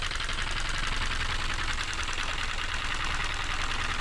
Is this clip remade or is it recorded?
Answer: recorded